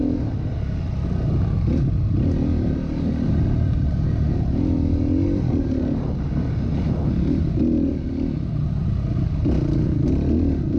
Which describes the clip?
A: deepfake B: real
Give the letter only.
B